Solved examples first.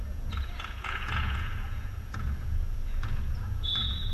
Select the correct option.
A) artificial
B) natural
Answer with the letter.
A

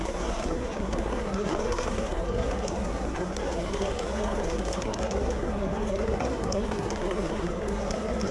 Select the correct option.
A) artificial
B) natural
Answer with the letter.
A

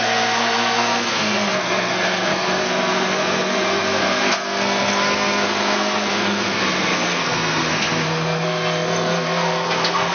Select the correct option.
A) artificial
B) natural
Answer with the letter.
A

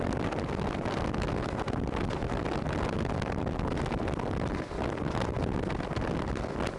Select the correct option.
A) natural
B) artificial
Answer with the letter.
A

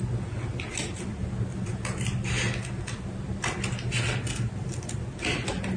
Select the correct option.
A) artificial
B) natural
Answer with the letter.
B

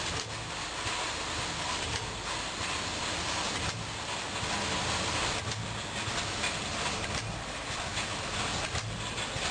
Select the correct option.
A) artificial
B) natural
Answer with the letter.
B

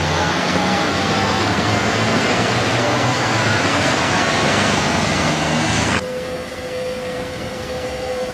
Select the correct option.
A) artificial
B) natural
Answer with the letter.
A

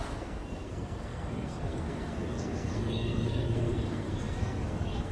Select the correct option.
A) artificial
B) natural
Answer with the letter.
A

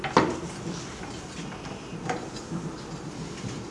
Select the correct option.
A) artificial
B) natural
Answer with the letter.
B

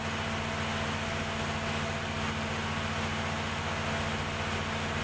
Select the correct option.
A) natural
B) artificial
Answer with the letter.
A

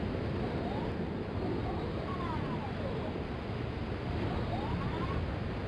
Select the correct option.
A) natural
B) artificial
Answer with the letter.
A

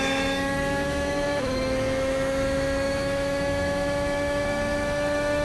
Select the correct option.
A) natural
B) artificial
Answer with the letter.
B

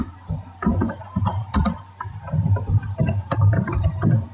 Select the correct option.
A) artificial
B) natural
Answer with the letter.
A